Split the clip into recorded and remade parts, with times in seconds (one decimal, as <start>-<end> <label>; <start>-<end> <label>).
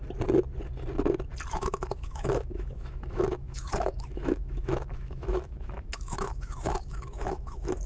0.0-1.5 recorded; 1.5-7.9 remade